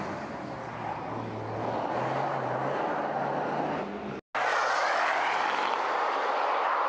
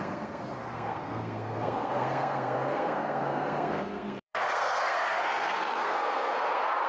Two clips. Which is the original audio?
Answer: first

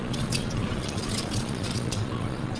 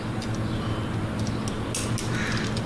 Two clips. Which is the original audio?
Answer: second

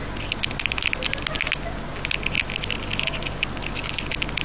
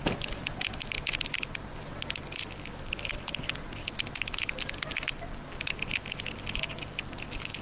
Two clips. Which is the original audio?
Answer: first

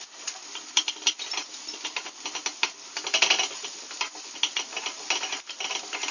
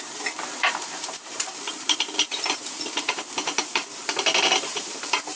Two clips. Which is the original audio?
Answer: first